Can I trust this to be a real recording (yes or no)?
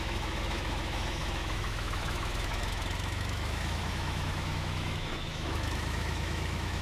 no